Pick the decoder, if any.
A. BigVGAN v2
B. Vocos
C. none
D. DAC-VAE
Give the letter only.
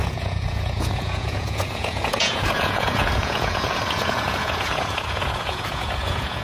B